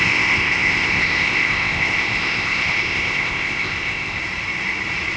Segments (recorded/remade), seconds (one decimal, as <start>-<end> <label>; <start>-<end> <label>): 0.0-4.2 remade; 4.2-5.2 recorded